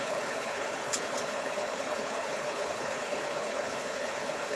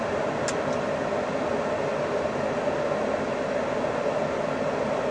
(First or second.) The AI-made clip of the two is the first